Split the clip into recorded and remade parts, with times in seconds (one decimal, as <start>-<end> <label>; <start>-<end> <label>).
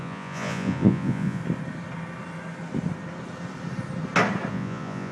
0.0-1.4 remade; 1.4-4.5 recorded; 4.5-5.1 remade